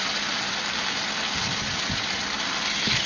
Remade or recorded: recorded